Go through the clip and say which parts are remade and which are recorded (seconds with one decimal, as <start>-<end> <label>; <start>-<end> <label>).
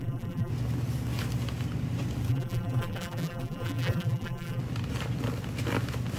0.0-0.5 remade; 0.5-2.3 recorded; 2.3-4.6 remade; 4.6-6.2 recorded